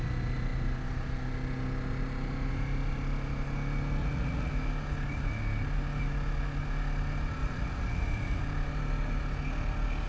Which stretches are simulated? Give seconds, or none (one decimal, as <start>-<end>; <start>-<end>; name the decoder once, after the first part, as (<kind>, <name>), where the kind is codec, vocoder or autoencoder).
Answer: 4.0-4.5 (vocoder, Vocos); 7.4-8.4